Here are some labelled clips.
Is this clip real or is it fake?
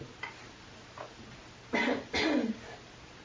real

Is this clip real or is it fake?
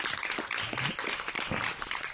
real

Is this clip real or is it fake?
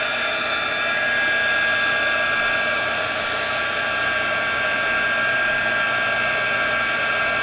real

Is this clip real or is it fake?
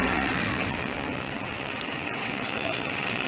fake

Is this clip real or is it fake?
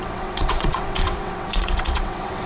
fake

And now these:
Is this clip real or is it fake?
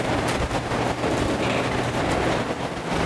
real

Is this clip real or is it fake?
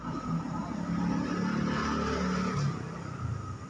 real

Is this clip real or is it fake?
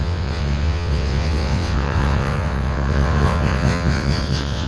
fake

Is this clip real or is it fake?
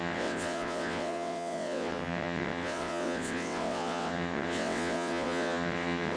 fake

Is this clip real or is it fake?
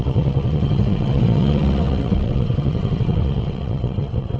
fake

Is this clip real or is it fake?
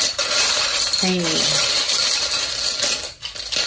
real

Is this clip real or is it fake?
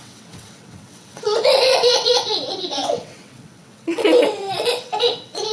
fake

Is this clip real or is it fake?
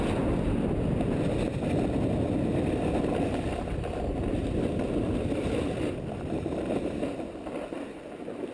real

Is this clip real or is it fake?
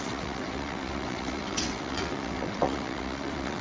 fake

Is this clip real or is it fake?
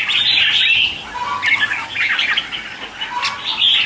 real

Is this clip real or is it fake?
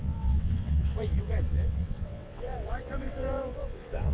fake